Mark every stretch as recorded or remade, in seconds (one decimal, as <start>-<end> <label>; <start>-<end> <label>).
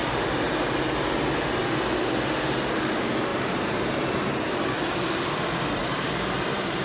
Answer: 0.0-3.3 recorded; 3.3-4.7 remade; 4.7-6.8 recorded